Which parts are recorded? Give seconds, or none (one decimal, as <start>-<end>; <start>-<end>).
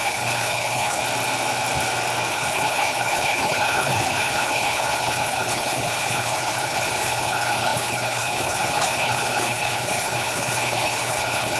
1.0-2.3